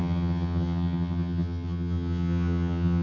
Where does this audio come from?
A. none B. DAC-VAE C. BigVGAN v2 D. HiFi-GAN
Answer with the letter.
D